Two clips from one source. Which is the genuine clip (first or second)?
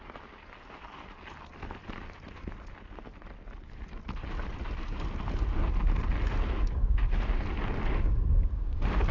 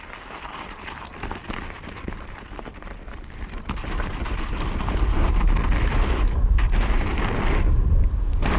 first